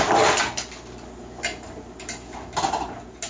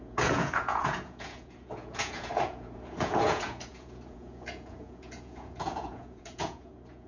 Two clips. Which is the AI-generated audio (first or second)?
second